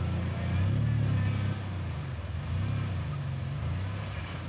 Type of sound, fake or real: real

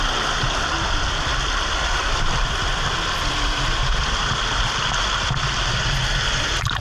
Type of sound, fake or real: real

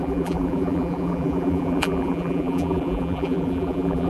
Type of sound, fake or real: fake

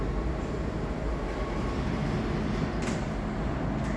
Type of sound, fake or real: real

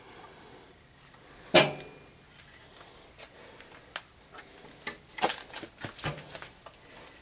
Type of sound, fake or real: real